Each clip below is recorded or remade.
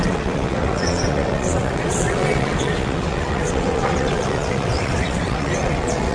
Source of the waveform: remade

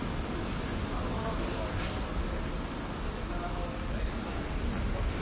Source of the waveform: recorded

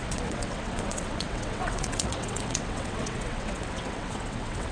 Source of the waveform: remade